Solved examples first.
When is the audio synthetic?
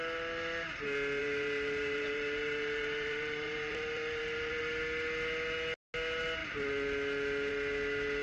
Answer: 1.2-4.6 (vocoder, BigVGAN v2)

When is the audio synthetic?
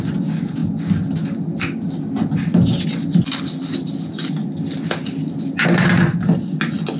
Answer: none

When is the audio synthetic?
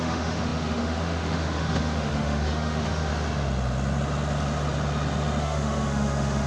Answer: 0.0-3.1 (autoencoder, DAC-VAE); 5.4-6.5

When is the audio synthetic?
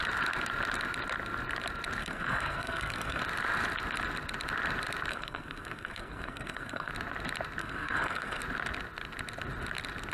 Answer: 2.0-3.2 (codec, SNAC); 5.1-6.9; 7.6-8.4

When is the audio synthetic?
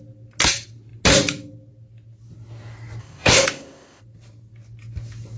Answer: 3.0-4.0 (codec, ZipCodec)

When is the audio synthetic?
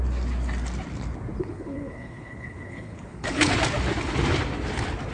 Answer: 1.4-3.5 (codec, HILCodec)